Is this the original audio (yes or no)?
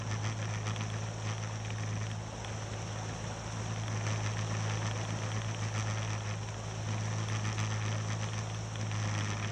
yes